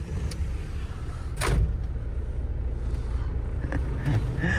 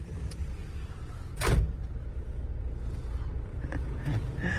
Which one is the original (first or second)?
first